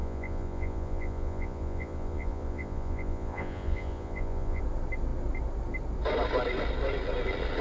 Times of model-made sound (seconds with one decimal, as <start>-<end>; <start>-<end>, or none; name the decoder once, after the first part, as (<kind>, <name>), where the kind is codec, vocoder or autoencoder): 0.0-4.6 (vocoder, Vocos)